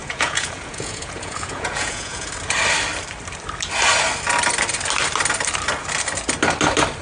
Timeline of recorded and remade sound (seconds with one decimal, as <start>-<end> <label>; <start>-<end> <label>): 0.0-2.3 remade; 2.3-7.0 recorded